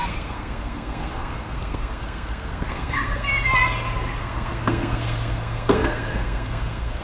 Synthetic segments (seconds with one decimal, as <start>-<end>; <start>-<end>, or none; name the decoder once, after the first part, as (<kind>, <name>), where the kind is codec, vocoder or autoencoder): 0.0-3.3 (codec, SNAC); 4.2-7.0